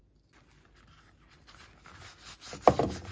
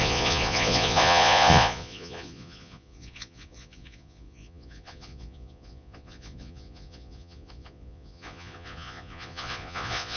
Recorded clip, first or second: first